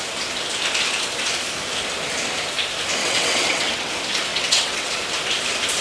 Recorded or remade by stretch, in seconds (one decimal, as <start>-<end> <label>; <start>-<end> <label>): 0.0-3.0 recorded; 3.0-3.9 remade; 3.9-4.3 recorded; 4.3-4.9 remade; 4.9-5.8 recorded